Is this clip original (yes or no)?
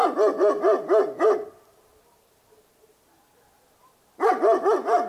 yes